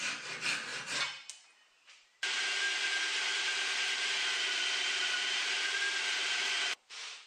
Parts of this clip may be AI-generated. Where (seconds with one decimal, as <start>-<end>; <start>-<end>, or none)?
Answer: 0.0-0.7; 1.5-2.4; 4.9-7.3